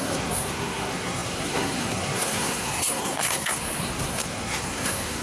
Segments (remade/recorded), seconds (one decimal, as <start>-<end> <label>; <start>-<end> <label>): 0.0-5.2 remade